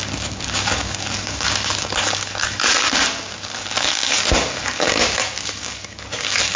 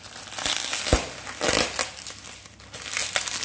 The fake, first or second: first